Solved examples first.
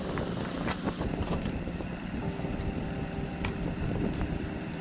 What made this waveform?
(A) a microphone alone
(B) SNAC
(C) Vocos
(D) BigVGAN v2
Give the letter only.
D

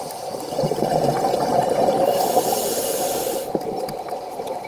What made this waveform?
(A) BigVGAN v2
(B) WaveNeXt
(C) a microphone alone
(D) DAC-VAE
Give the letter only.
A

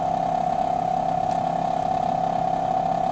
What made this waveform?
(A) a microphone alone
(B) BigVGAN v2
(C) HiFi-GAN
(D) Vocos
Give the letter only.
A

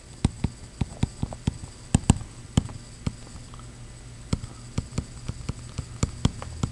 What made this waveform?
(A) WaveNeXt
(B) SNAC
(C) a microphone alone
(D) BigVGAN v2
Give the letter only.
C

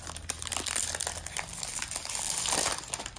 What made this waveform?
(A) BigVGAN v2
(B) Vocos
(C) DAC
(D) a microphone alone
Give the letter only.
D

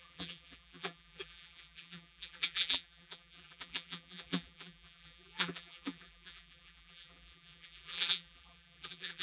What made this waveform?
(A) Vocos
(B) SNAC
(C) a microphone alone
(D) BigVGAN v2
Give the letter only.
D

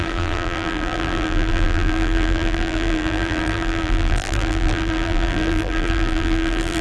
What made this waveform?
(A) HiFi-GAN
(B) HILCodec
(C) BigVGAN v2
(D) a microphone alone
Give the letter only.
C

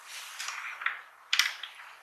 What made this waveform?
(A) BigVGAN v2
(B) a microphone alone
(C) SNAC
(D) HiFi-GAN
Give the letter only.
B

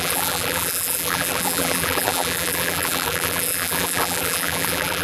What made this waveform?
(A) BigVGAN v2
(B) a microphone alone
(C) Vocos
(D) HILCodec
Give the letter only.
A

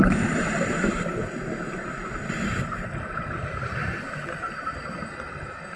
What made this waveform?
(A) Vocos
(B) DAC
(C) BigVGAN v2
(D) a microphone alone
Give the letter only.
C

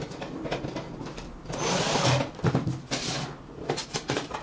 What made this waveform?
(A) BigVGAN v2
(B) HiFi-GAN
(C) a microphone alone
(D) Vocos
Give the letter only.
A